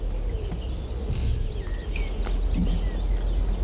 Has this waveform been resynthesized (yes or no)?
no